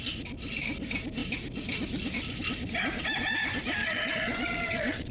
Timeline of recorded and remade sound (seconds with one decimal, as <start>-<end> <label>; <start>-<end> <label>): 0.0-3.8 recorded; 3.8-5.1 remade